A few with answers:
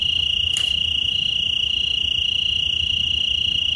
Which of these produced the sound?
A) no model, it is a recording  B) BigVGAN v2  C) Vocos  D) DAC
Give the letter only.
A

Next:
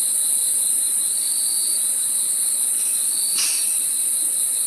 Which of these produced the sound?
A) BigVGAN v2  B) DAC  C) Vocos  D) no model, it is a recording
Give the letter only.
D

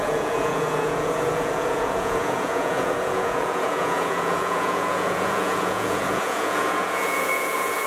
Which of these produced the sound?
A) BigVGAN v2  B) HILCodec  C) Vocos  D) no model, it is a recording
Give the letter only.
C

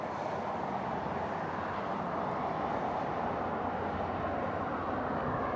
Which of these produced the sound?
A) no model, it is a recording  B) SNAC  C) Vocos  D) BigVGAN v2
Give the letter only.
A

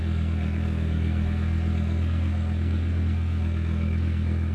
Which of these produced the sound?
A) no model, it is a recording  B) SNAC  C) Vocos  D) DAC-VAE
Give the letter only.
B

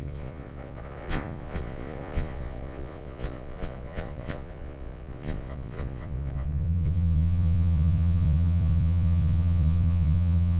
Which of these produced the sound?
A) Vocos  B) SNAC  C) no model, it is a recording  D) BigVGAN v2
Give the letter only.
A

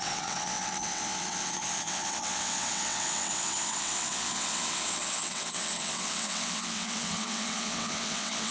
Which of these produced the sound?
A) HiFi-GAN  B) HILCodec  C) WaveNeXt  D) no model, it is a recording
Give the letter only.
C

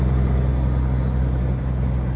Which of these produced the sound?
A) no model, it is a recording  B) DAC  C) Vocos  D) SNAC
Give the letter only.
A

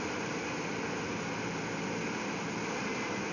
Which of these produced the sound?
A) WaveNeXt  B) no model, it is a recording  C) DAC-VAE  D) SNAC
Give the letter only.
B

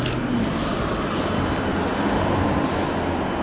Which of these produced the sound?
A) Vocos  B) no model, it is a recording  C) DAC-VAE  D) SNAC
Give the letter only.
B